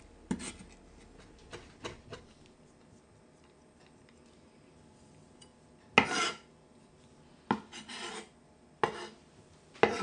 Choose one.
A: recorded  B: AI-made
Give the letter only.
A